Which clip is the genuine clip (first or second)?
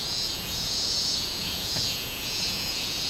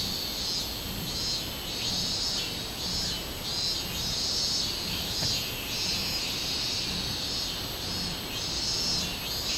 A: second